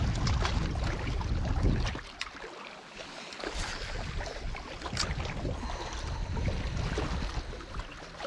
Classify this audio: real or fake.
real